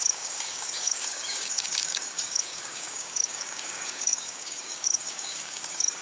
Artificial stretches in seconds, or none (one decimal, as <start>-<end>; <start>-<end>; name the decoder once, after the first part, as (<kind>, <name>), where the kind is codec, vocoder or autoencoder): 0.0-6.0 (codec, DAC)